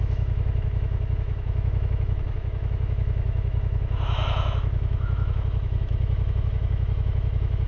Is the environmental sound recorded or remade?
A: remade